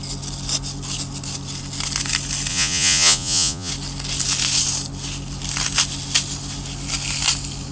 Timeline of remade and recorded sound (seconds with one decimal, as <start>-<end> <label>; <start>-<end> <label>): 0.0-2.5 recorded; 2.5-3.7 remade; 3.7-7.7 recorded